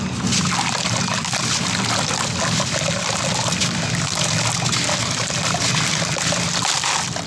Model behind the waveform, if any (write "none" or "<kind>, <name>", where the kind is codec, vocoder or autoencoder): none